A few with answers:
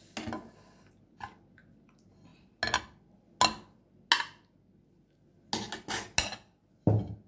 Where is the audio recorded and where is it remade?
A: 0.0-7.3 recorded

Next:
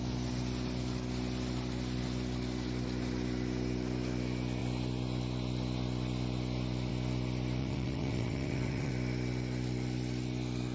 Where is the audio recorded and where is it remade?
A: 0.0-7.6 recorded; 7.6-8.9 remade; 8.9-10.7 recorded

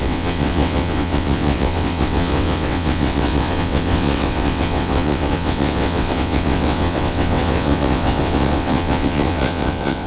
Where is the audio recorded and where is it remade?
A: 0.0-10.1 remade

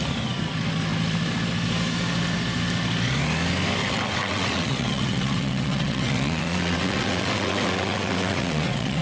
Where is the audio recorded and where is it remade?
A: 0.0-3.8 recorded; 3.8-9.0 remade